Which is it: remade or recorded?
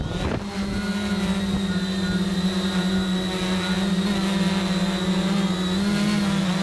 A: recorded